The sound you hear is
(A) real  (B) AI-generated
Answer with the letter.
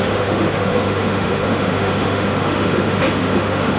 B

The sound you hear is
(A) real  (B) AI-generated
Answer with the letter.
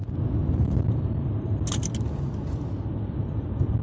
A